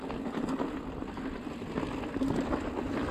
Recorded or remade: recorded